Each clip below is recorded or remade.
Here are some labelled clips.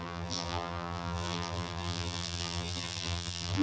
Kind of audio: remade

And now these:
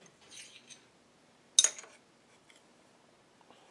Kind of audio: recorded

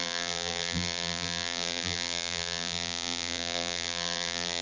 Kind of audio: remade